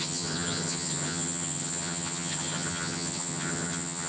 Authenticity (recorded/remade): remade